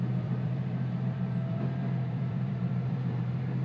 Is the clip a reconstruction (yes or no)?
yes